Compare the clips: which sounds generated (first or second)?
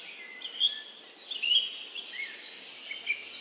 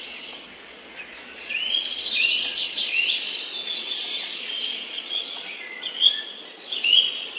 second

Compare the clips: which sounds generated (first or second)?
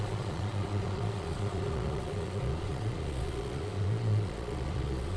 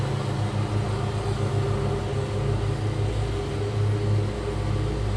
first